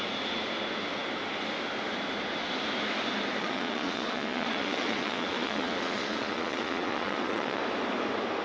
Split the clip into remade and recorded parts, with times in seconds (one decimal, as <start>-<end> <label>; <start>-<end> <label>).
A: 0.0-3.4 recorded; 3.4-7.6 remade; 7.6-8.4 recorded